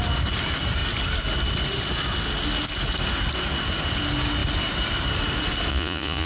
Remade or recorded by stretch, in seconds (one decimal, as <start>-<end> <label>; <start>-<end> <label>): 0.0-5.7 recorded; 5.7-6.3 remade